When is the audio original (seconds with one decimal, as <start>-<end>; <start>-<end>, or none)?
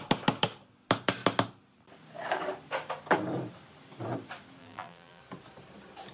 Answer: 0.0-4.6; 5.2-6.1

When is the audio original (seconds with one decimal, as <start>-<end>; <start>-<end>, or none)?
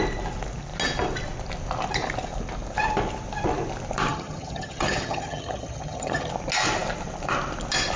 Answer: 0.0-4.1; 6.3-8.0